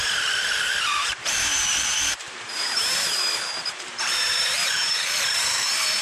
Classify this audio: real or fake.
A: fake